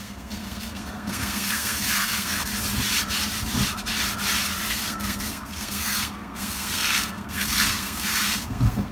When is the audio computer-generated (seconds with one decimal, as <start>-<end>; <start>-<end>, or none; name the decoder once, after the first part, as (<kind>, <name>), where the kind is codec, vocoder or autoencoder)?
0.0-2.5 (codec, SNAC); 4.7-8.9